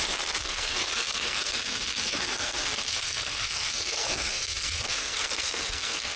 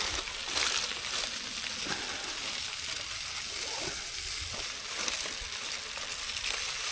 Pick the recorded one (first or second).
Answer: second